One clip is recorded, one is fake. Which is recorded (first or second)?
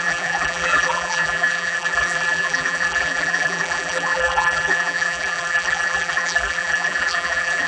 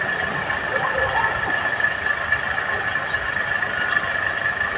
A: second